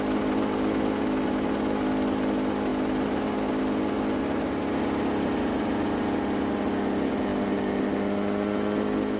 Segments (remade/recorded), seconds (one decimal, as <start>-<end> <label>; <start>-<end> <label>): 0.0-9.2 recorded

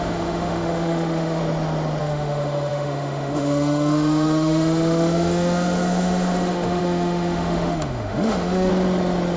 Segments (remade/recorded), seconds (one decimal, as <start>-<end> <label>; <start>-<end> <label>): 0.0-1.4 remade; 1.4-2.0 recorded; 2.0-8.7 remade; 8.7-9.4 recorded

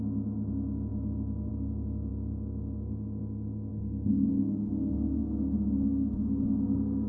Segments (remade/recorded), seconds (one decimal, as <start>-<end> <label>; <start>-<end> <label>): 0.0-2.1 remade; 2.1-3.2 recorded; 3.2-3.7 remade; 3.7-4.3 recorded; 4.3-7.1 remade

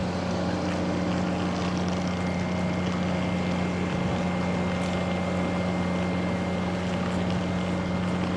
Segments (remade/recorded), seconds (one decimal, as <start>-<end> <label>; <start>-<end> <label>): 0.0-8.4 recorded